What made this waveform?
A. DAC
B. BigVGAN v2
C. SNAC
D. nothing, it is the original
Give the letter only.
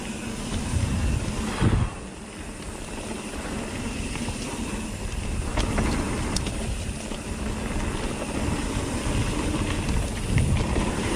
D